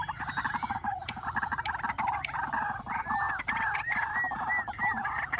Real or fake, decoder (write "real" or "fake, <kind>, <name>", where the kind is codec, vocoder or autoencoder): real